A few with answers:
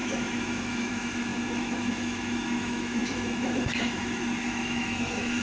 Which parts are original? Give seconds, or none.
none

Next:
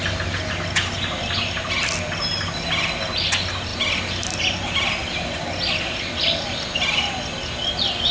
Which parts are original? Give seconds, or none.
0.0-8.1

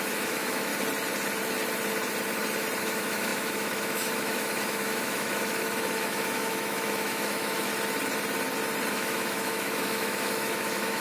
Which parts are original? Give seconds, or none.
0.7-2.8; 7.7-8.9

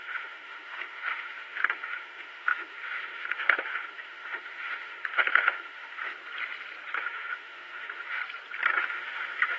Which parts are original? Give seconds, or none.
6.1-6.9; 8.2-8.8

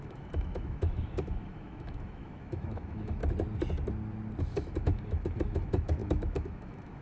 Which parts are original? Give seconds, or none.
3.2-4.4

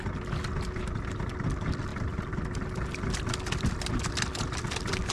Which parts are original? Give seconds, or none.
0.0-5.1